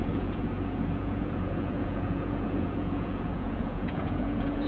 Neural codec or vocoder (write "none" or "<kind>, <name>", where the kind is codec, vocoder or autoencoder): vocoder, Vocos